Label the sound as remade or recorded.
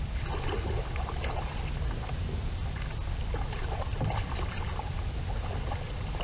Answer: recorded